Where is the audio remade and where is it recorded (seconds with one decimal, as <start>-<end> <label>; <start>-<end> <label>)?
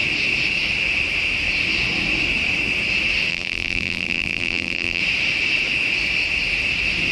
0.0-3.3 recorded; 3.3-5.0 remade; 5.0-7.1 recorded